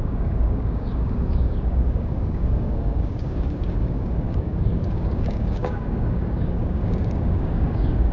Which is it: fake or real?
fake